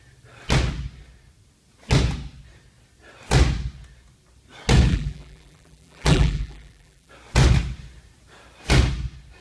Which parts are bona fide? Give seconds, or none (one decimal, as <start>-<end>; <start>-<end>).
0.0-4.9; 7.1-9.4